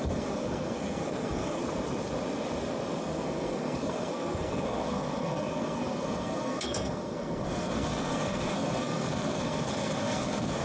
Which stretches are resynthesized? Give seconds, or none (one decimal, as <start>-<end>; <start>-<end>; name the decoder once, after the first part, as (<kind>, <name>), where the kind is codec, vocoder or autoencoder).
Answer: 0.0-1.6 (codec, SNAC); 3.0-10.6